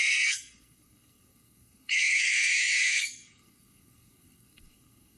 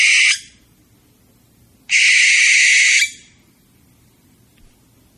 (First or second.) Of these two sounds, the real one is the second